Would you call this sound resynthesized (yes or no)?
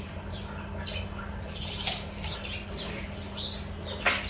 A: no